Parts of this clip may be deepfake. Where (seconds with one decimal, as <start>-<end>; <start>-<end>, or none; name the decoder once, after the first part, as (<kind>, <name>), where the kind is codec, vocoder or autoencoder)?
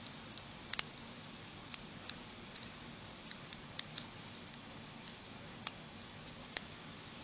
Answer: 6.4-7.2 (autoencoder, DAC-VAE)